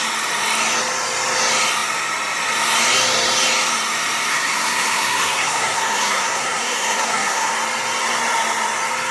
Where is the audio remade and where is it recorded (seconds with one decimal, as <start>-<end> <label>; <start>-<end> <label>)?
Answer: 0.0-4.3 recorded; 4.3-7.5 remade; 7.5-9.1 recorded